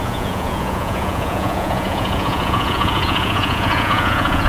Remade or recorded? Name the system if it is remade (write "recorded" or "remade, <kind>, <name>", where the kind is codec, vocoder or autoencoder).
remade, vocoder, Vocos